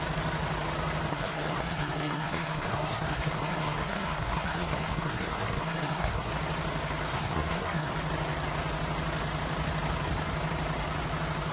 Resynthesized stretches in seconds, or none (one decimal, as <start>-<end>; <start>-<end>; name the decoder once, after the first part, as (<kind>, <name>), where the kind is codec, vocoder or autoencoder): 1.1-6.3 (codec, SNAC); 7.1-7.9